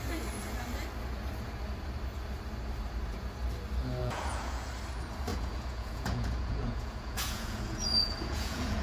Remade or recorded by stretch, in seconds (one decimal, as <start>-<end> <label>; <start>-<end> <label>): 0.0-4.0 recorded; 4.0-4.7 remade; 4.7-5.3 recorded; 5.3-8.8 remade